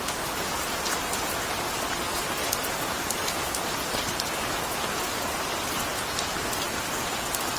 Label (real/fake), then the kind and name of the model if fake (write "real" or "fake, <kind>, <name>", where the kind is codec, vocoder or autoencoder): real